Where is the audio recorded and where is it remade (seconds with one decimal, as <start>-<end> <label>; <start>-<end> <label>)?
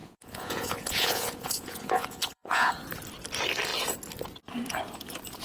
0.0-2.7 remade; 2.7-5.4 recorded